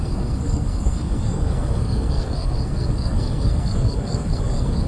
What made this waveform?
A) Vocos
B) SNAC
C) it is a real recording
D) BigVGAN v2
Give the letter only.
B